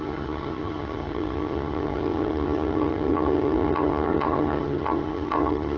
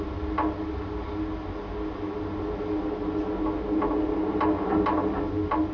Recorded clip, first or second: second